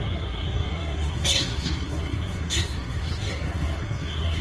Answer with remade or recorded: remade